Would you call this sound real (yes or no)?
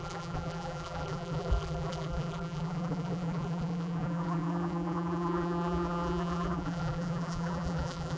no